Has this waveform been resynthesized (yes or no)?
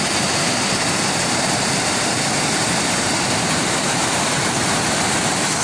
no